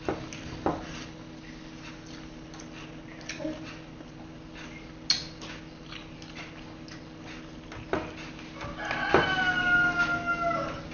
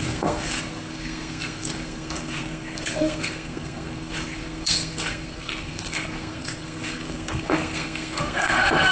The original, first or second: first